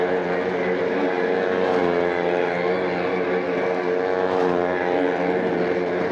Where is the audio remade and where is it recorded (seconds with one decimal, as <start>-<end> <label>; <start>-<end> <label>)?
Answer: 0.0-6.1 recorded